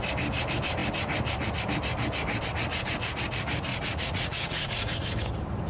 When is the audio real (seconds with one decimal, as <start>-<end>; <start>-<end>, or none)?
0.0-3.7; 4.9-5.7